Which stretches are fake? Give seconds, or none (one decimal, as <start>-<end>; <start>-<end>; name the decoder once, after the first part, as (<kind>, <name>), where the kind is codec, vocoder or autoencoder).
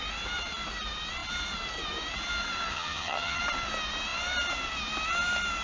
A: 2.7-3.4 (vocoder, HiFi-GAN)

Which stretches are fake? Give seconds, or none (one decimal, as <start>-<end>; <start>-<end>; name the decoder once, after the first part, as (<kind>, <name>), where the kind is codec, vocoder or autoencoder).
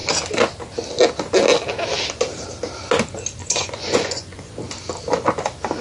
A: 3.4-4.6 (vocoder, Vocos)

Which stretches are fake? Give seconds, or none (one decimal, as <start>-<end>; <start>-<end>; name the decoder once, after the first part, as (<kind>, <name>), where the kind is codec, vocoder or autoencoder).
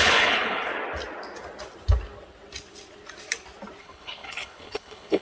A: 0.0-0.7 (codec, HILCodec); 3.8-5.2